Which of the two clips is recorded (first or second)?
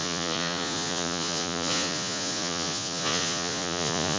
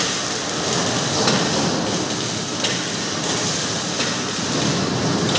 second